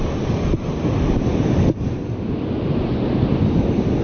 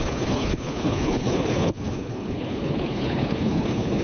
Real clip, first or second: first